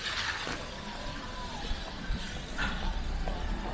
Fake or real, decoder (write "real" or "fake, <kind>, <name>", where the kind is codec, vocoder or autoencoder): fake, vocoder, BigVGAN v2